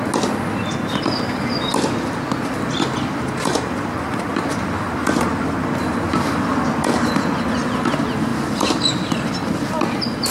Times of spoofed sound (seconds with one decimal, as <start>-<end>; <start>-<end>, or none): none